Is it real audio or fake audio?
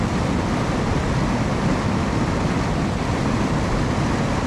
real